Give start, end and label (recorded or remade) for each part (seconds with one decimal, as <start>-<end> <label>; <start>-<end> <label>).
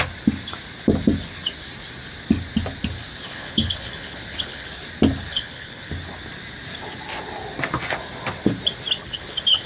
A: 0.0-3.3 recorded; 3.3-4.7 remade; 4.7-5.3 recorded; 5.3-5.9 remade; 5.9-9.0 recorded; 9.0-9.7 remade